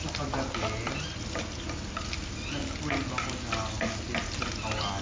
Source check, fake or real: real